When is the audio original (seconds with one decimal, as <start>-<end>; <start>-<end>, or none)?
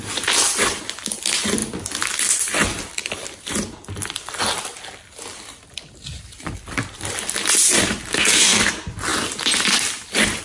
0.0-8.1; 8.6-10.4